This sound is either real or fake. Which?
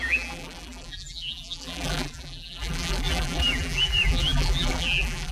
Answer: fake